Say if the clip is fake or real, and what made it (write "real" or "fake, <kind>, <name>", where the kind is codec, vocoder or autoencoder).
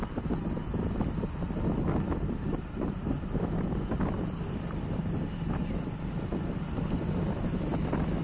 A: real